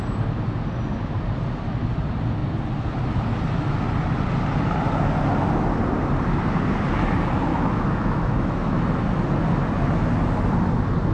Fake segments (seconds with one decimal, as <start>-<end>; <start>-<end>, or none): 7.5-8.8